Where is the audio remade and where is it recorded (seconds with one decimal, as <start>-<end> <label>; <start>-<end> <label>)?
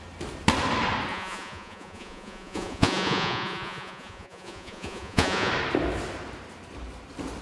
0.0-1.1 recorded; 1.1-5.5 remade; 5.5-7.4 recorded